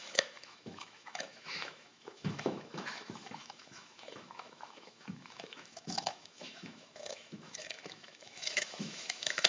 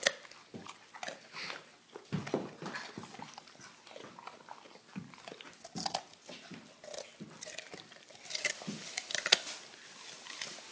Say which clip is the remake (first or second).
first